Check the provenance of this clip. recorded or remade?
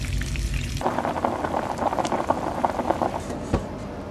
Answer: recorded